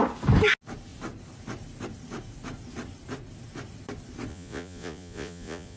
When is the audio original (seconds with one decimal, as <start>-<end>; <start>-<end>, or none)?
0.0-4.3